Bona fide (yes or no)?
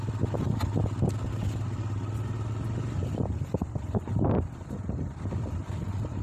yes